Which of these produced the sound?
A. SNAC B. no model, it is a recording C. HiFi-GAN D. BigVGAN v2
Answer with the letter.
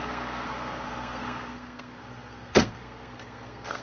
A